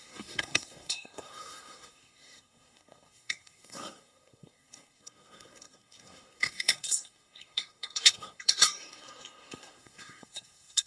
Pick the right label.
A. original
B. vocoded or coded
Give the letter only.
B